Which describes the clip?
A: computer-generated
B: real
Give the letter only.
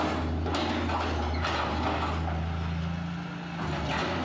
B